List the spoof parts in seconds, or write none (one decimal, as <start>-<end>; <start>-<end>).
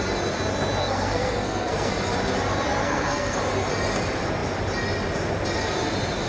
0.8-1.9; 2.8-3.4